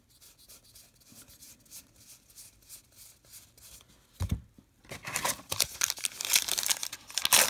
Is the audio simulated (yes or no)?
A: no